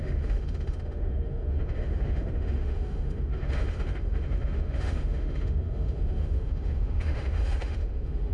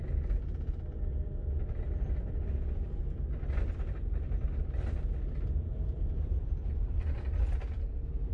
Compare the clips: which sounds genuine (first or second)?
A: second